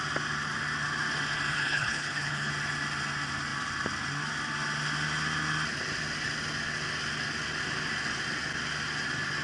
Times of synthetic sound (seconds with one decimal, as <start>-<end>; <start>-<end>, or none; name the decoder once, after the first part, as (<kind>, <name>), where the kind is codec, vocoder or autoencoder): 1.5-2.5 (codec, HILCodec)